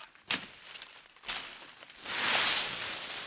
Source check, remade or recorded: recorded